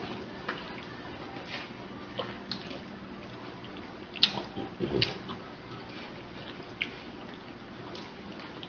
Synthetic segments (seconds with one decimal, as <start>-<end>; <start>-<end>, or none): none